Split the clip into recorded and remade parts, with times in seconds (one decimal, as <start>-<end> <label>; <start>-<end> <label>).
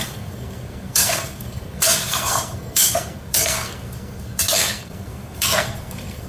0.0-6.3 remade